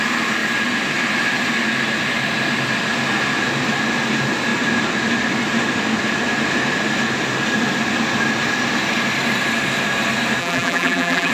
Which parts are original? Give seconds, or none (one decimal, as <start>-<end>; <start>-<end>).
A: 0.0-10.4